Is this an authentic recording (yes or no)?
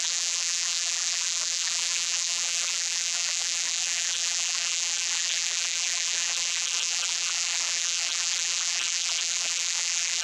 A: no